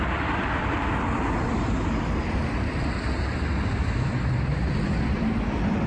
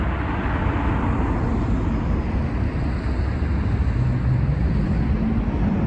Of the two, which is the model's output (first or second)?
first